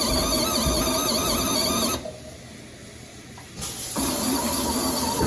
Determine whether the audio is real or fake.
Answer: real